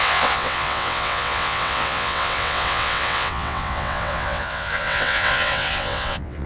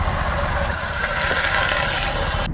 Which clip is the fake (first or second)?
first